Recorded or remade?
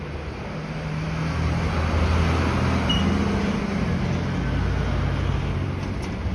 recorded